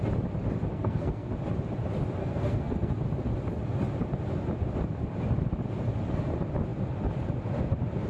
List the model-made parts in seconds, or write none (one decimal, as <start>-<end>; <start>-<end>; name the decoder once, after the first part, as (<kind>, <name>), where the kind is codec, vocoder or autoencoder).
0.7-1.3 (codec, SNAC); 2.2-2.9